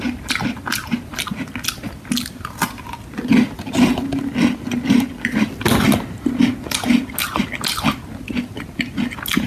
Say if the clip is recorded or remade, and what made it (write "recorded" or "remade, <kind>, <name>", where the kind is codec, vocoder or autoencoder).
recorded